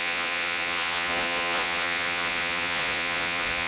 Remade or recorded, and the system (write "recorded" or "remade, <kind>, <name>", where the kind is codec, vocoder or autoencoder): remade, vocoder, Vocos